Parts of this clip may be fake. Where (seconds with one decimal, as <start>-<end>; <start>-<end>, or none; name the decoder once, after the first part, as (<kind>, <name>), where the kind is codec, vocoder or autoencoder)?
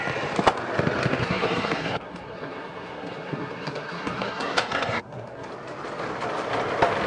1.2-5.5 (codec, SNAC)